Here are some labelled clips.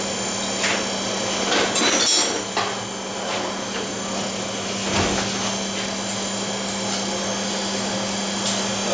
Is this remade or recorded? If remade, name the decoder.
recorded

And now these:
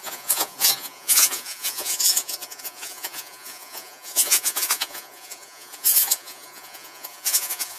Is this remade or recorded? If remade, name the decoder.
remade, vocoder, Vocos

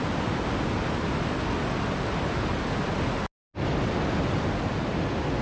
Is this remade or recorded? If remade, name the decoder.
recorded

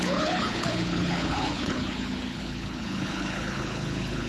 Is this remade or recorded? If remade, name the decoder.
remade, codec, HILCodec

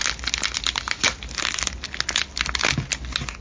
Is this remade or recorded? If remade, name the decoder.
recorded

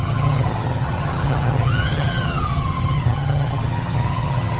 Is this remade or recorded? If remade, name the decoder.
remade, vocoder, HiFi-GAN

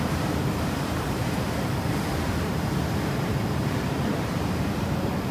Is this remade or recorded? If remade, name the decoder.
remade, vocoder, BigVGAN v2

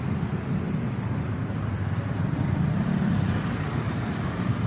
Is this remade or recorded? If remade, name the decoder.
recorded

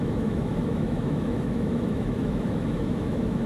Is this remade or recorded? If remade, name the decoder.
remade, autoencoder, DAC-VAE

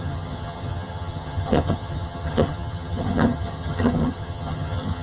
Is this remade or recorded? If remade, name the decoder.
remade, vocoder, HiFi-GAN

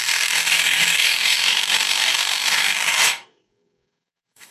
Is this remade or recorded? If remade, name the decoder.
remade, codec, DAC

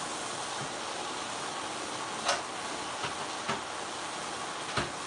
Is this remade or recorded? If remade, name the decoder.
recorded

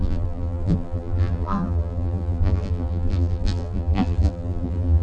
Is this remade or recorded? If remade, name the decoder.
remade, vocoder, BigVGAN v2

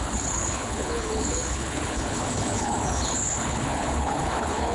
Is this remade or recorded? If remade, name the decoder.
remade, codec, HILCodec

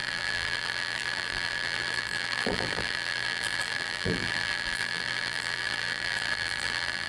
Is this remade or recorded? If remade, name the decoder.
remade, vocoder, BigVGAN v2